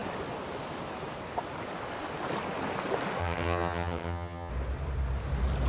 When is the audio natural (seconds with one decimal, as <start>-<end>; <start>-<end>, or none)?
0.0-3.2; 4.5-5.7